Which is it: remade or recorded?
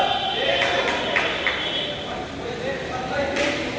recorded